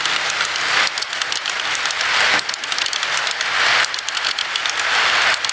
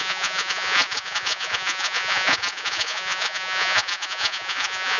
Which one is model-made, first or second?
second